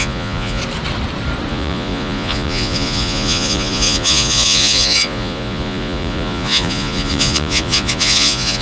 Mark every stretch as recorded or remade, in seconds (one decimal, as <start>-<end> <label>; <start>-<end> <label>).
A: 0.0-0.6 remade; 0.6-1.5 recorded; 1.5-8.6 remade